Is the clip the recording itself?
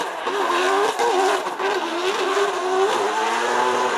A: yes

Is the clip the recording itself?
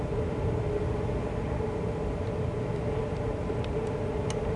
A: yes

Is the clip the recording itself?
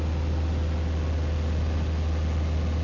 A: yes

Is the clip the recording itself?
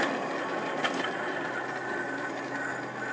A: yes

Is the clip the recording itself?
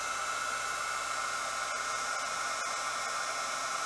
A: yes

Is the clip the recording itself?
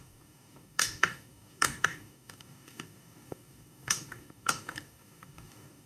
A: no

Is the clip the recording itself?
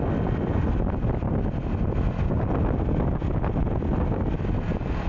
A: yes